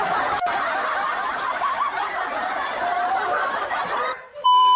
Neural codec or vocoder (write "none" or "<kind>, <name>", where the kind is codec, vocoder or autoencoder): vocoder, BigVGAN v2